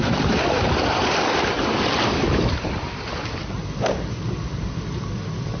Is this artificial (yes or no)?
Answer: no